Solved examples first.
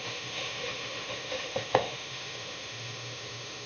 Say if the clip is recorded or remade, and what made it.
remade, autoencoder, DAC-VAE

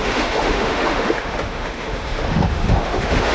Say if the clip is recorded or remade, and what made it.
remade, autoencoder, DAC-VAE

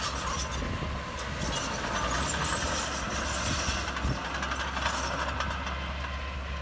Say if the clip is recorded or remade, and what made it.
recorded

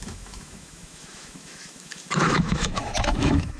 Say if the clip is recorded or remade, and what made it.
remade, autoencoder, DAC-VAE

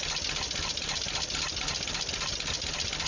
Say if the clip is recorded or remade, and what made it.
recorded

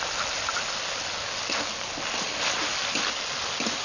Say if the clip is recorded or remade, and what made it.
recorded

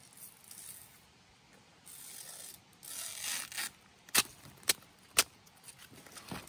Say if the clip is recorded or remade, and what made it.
recorded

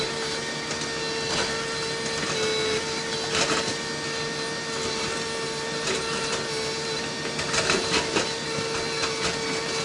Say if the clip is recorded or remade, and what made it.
recorded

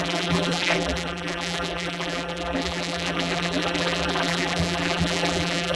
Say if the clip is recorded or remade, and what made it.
remade, vocoder, BigVGAN v2